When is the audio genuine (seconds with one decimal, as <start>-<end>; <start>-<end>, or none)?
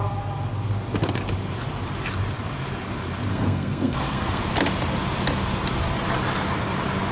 0.0-3.3; 4.4-7.1